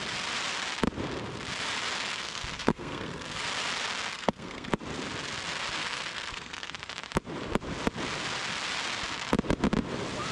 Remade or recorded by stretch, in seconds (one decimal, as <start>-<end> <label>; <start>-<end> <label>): 0.0-2.1 recorded; 2.1-3.4 remade; 3.4-4.1 recorded; 4.1-4.7 remade; 4.7-5.8 recorded; 5.8-6.7 remade; 6.7-10.3 recorded